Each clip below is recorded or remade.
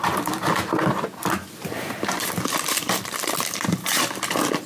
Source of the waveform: remade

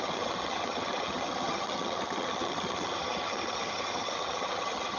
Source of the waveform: remade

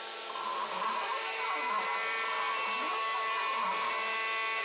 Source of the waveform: recorded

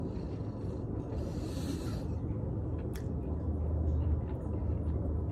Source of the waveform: recorded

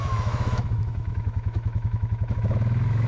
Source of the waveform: remade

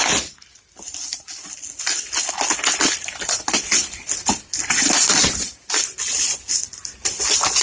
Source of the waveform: recorded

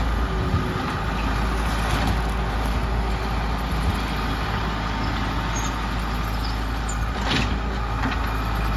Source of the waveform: recorded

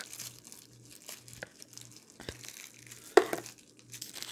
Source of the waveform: recorded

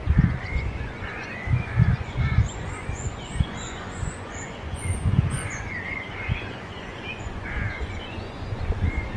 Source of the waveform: remade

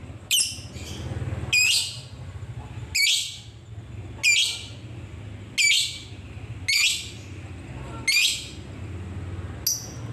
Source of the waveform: recorded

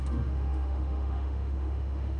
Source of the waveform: remade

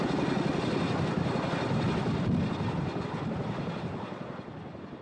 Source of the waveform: remade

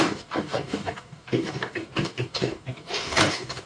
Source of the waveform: remade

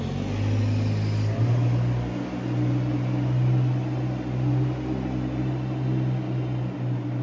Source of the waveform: recorded